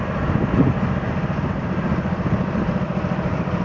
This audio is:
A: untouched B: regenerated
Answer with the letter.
A